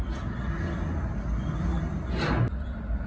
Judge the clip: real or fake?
real